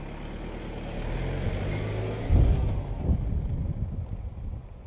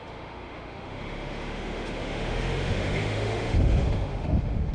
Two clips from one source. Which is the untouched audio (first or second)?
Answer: first